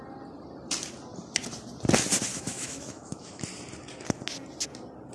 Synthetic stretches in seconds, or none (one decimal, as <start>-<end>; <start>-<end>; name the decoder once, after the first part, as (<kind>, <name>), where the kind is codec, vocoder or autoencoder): 2.3-3.4 (autoencoder, DAC-VAE)